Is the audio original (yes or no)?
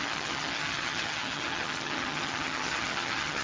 no